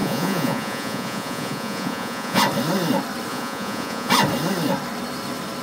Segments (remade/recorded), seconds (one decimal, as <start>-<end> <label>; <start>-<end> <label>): 0.0-2.4 remade; 2.4-3.3 recorded; 3.3-4.1 remade; 4.1-5.6 recorded